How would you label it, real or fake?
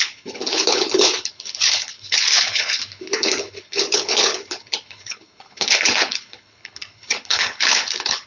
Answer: fake